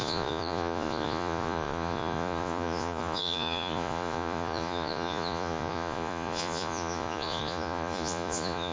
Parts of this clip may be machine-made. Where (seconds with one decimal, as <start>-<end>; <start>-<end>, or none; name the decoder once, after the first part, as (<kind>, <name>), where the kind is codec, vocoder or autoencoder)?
0.0-8.7 (vocoder, Vocos)

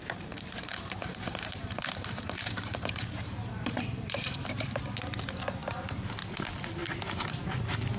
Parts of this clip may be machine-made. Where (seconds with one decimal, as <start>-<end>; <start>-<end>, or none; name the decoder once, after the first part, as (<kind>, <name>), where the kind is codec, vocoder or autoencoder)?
0.0-4.8 (vocoder, BigVGAN v2)

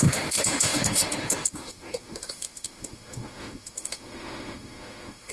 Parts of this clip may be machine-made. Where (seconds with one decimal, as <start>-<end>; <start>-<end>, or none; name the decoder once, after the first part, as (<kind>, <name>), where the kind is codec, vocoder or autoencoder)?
0.0-5.3 (autoencoder, DAC-VAE)

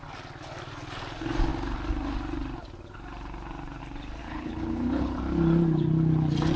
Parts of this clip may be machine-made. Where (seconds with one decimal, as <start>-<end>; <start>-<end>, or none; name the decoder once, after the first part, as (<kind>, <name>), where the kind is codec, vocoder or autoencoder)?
4.2-5.2 (codec, HILCodec)

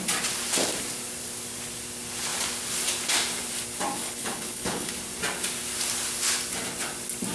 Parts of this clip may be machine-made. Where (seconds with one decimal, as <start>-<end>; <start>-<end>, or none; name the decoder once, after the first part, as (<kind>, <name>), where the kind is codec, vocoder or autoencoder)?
4.0-4.9 (codec, HILCodec)

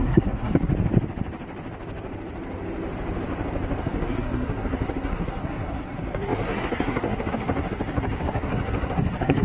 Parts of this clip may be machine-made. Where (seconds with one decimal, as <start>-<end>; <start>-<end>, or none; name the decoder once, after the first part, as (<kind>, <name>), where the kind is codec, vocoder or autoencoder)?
0.0-0.7 (codec, SNAC); 3.8-9.4

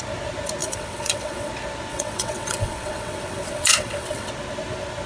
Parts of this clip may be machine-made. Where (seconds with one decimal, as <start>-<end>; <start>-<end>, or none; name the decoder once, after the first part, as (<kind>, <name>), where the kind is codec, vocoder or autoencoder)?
0.6-1.5 (vocoder, WaveNeXt); 1.9-4.3

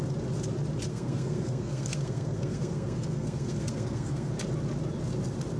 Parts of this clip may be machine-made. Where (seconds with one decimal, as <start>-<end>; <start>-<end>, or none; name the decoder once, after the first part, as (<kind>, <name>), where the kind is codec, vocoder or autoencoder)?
0.9-4.3 (codec, SNAC)